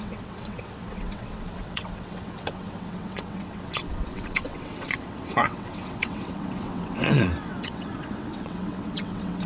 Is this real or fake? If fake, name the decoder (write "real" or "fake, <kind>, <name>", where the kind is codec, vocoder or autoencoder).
fake, vocoder, WaveNeXt